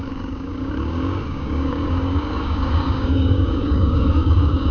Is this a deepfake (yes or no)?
yes